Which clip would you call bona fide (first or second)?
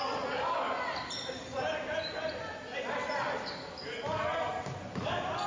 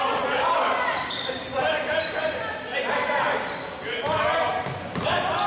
first